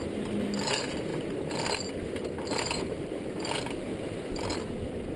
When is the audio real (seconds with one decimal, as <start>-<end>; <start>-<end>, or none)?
0.0-3.9